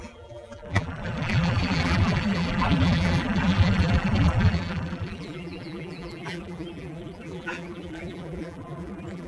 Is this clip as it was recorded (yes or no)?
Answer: no